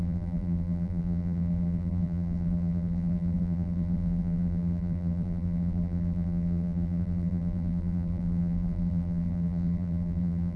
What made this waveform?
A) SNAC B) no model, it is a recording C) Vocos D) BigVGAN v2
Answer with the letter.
D